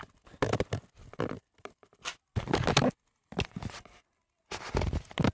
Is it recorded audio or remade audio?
recorded